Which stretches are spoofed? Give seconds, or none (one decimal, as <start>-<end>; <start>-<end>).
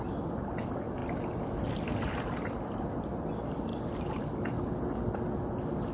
none